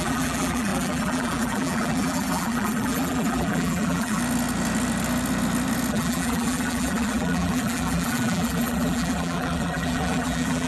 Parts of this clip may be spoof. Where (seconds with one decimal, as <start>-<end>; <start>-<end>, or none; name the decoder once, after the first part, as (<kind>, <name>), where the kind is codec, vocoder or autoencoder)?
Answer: 0.0-4.2 (vocoder, BigVGAN v2); 5.9-10.7